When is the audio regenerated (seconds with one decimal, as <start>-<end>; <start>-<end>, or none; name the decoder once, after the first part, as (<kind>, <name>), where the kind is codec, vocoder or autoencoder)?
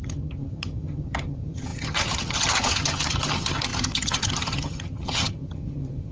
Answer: 0.0-6.1 (vocoder, HiFi-GAN)